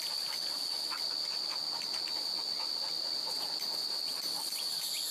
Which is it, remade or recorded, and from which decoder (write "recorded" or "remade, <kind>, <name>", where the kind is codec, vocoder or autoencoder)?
recorded